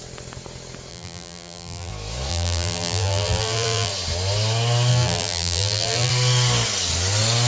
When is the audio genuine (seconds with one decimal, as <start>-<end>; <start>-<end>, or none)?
0.0-0.9; 1.9-2.3; 3.9-4.9; 6.1-7.5